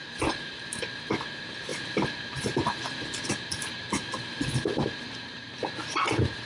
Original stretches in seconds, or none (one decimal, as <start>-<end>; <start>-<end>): none